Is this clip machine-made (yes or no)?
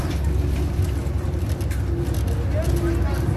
no